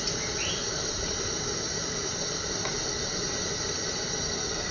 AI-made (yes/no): no